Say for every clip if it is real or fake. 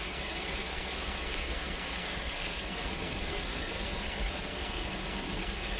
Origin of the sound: fake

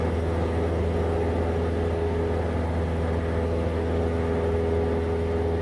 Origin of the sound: real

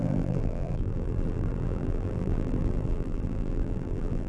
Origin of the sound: fake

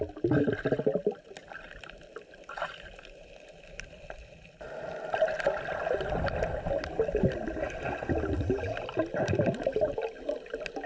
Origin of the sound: real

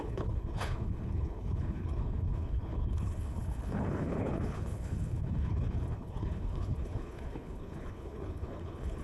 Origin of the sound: fake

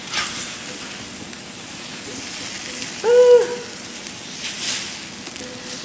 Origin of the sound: real